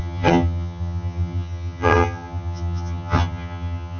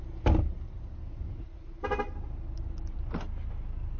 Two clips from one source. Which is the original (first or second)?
second